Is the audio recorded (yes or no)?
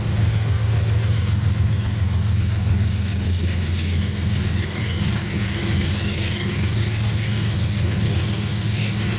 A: no